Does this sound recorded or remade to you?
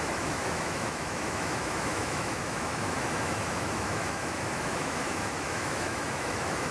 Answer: remade